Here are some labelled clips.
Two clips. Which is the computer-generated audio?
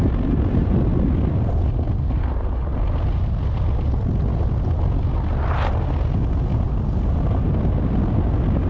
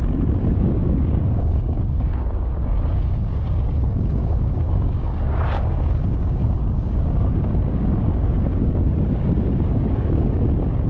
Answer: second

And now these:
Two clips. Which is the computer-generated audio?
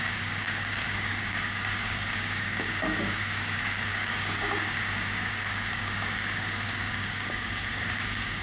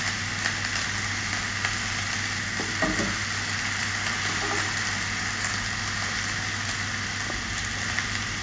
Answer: first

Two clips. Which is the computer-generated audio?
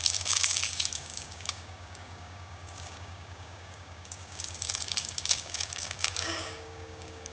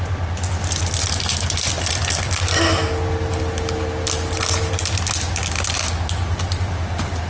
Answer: first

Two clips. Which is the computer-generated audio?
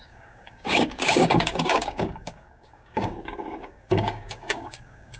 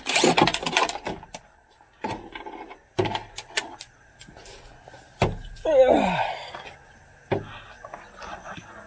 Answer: first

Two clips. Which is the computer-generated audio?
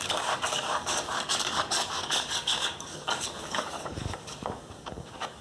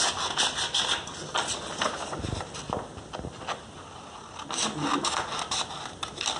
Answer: first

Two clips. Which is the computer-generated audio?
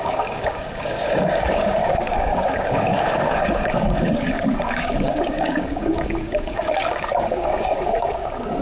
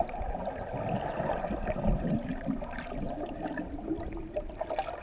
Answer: first